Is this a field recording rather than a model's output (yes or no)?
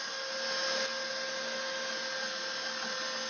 yes